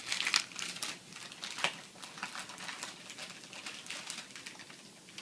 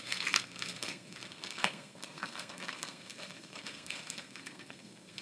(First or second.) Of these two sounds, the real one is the first